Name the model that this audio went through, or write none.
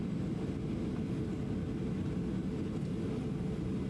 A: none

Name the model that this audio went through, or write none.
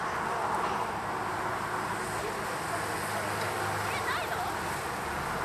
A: none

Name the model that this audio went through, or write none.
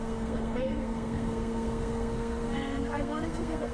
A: codec, SNAC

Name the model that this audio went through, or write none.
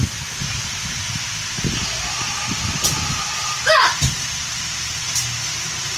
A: none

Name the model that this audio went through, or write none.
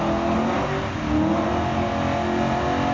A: none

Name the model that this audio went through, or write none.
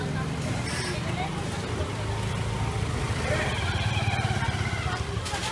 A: none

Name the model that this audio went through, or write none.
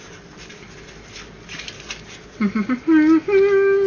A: none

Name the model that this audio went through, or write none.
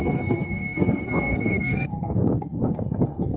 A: codec, SNAC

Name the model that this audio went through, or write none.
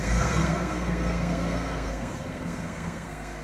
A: codec, SNAC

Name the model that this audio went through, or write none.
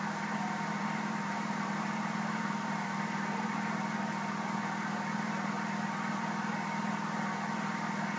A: none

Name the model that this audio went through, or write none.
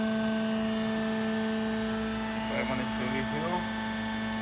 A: none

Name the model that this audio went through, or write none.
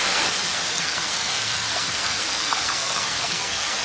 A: codec, SNAC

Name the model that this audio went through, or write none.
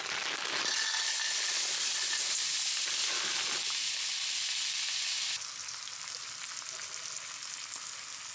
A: none